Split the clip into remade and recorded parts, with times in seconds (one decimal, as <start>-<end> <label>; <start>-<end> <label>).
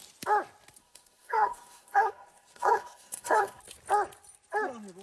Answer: 0.0-0.8 recorded; 0.8-3.6 remade; 3.6-5.0 recorded